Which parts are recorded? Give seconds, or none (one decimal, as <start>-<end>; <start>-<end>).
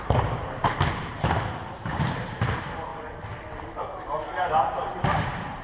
2.9-4.5